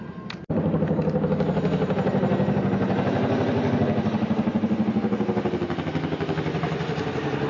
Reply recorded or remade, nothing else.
recorded